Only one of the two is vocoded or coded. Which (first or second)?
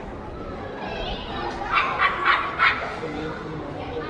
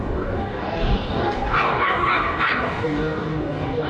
second